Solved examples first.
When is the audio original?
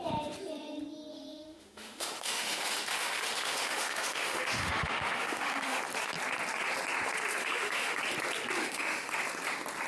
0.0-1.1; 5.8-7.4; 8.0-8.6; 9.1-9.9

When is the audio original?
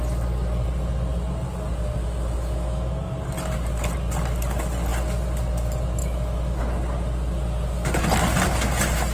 0.0-2.0; 3.2-6.0; 6.6-9.1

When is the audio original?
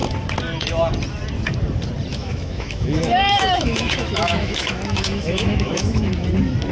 0.0-2.1; 6.1-6.7